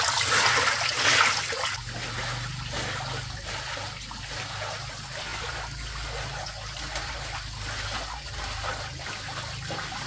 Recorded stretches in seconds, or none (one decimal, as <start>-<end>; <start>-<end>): 0.0-10.1